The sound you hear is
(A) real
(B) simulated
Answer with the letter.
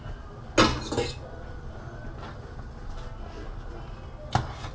A